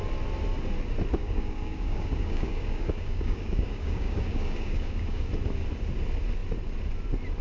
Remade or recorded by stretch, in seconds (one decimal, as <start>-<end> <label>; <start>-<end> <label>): 0.0-1.2 recorded; 1.2-5.3 remade; 5.3-7.4 recorded

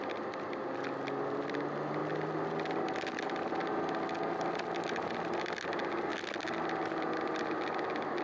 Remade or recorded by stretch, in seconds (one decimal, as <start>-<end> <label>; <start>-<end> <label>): 0.0-8.2 recorded

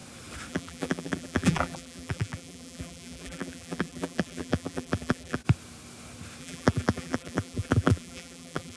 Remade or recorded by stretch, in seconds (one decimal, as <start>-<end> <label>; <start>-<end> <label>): 0.0-0.5 recorded; 0.5-5.4 remade; 5.4-6.4 recorded; 6.4-8.8 remade